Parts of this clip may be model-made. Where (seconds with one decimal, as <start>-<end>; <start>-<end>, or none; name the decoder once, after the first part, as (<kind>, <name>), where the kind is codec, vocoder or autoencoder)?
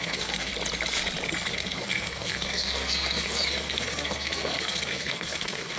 0.0-0.5 (codec, SNAC); 1.5-5.8